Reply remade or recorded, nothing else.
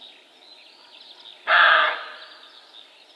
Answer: recorded